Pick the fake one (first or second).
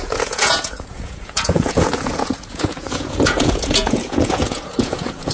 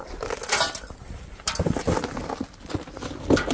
first